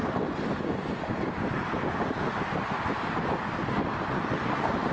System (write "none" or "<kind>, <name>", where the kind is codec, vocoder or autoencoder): none